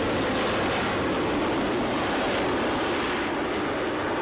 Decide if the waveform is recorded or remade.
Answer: recorded